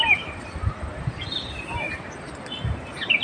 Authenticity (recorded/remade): recorded